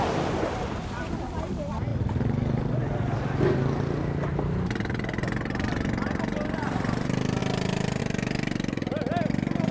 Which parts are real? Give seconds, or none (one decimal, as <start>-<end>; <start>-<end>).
0.0-9.7

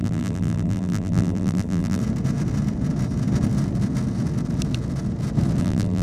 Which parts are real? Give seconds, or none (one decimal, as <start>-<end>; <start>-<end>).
2.0-5.6

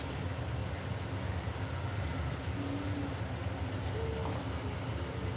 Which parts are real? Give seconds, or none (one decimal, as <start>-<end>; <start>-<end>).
0.0-5.4

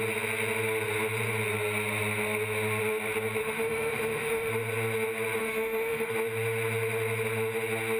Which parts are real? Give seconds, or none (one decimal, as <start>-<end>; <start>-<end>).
0.0-3.4; 4.5-5.4; 6.1-8.0

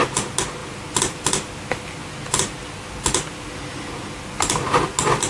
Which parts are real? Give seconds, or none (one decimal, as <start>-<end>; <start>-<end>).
0.0-5.3

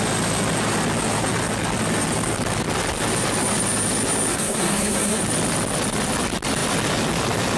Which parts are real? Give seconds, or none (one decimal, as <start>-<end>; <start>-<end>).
0.0-4.3; 5.2-7.6